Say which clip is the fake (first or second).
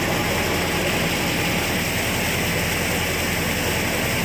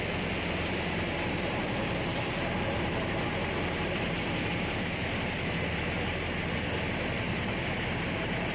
second